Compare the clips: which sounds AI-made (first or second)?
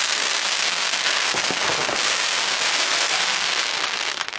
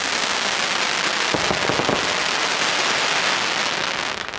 first